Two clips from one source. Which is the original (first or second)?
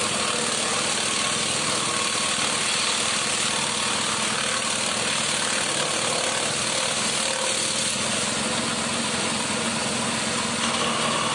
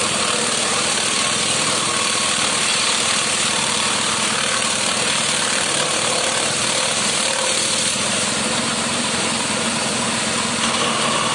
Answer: first